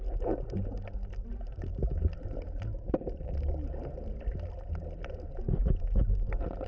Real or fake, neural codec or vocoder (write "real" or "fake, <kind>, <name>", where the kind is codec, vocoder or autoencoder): real